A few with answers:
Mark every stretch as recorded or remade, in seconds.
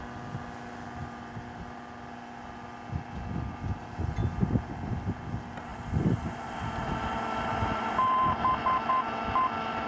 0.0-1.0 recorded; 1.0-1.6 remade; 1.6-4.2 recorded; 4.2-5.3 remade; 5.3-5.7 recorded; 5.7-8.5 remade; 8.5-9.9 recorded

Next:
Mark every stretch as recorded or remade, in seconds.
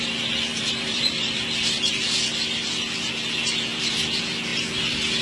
0.0-0.5 recorded; 0.5-1.9 remade; 1.9-5.2 recorded